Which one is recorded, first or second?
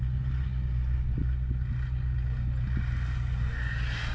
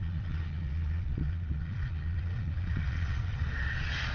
first